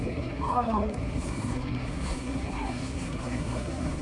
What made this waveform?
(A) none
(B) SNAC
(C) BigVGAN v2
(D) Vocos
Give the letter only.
B